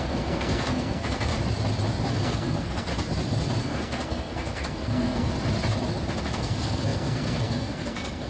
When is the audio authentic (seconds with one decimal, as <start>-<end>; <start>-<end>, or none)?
1.3-2.1; 2.9-3.6; 5.3-6.2